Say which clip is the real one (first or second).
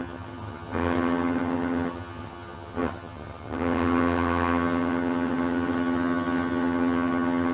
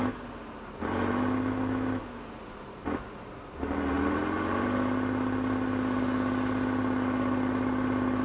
second